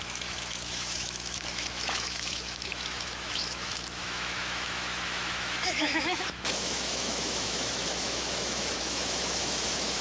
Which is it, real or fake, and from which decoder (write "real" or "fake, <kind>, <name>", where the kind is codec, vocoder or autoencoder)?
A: fake, autoencoder, DAC-VAE